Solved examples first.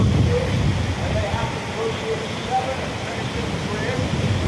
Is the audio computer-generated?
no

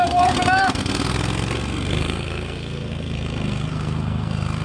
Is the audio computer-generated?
yes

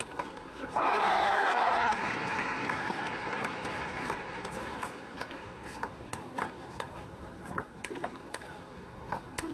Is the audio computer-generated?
yes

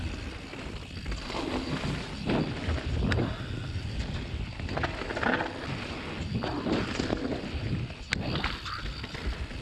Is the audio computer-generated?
no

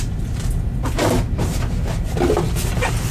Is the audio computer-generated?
yes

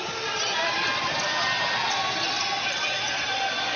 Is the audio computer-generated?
no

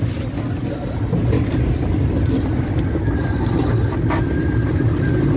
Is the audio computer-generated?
no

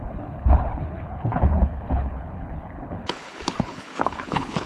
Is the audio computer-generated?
yes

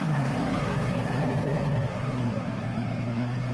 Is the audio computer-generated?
yes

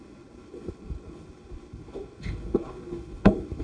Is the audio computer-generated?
yes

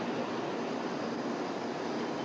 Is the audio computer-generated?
no